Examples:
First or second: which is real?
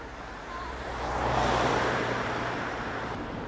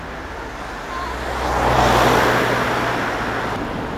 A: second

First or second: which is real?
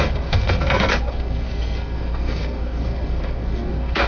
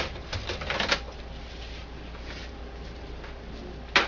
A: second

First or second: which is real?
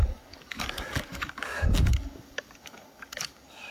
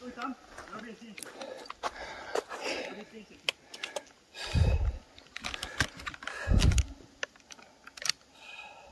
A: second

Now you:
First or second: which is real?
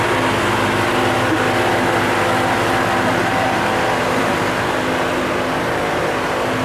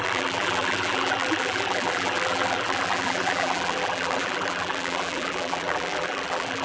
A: first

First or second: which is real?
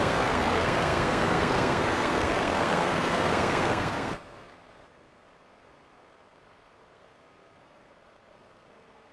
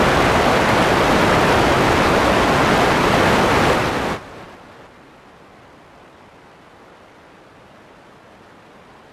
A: second